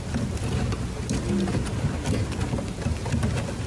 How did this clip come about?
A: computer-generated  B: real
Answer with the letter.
B